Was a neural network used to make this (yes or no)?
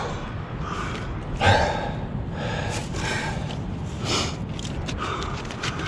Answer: no